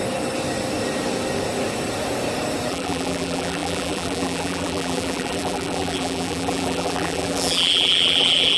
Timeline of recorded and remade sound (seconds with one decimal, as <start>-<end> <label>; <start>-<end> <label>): 0.0-2.7 recorded; 2.7-8.6 remade